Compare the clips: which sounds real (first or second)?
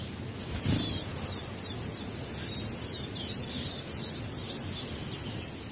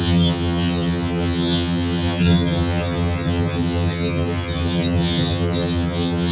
first